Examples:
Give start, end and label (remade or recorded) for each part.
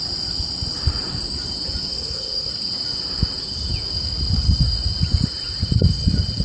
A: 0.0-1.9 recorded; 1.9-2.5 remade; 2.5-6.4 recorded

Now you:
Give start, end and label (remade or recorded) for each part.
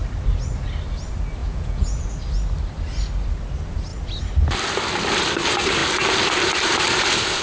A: 0.0-1.4 recorded; 1.4-2.1 remade; 2.1-7.4 recorded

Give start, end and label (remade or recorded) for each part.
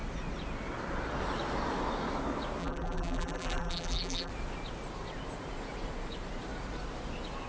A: 0.0-2.6 recorded; 2.6-4.3 remade; 4.3-7.5 recorded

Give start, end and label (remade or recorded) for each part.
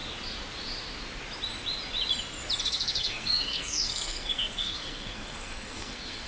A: 0.0-2.6 recorded; 2.6-6.3 remade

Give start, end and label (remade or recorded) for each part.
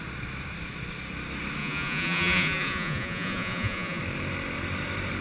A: 0.0-1.6 recorded; 1.6-4.0 remade; 4.0-5.2 recorded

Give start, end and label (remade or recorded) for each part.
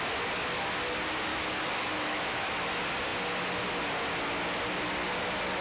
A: 0.0-1.3 recorded; 1.3-2.5 remade; 2.5-5.6 recorded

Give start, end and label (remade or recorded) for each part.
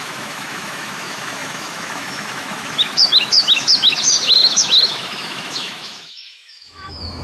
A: 0.0-7.2 remade